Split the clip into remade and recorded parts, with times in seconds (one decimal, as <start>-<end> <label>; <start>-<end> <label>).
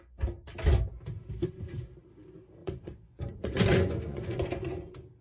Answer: 0.0-2.6 recorded; 2.6-4.5 remade; 4.5-5.2 recorded